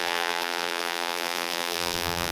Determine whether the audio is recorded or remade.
remade